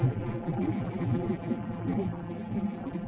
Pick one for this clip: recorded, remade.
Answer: remade